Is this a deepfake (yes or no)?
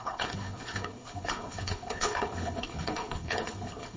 yes